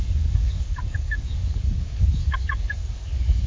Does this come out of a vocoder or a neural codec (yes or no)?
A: yes